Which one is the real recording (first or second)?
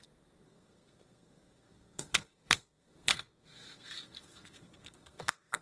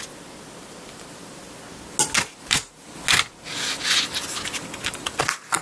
second